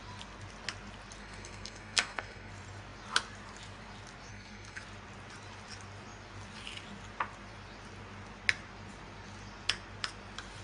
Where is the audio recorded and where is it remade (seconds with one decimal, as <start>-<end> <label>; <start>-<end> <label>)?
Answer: 0.0-1.2 recorded; 1.2-2.5 remade; 2.5-4.3 recorded; 4.3-4.8 remade; 4.8-10.6 recorded